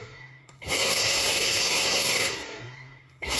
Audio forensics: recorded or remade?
remade